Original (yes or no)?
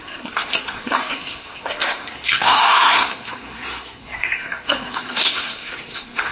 no